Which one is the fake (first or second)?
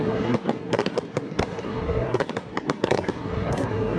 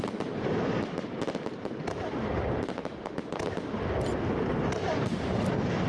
first